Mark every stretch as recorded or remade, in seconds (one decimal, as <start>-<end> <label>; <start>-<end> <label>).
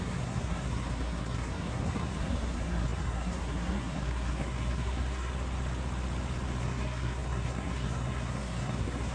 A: 0.0-5.3 remade; 5.3-6.6 recorded; 6.6-9.1 remade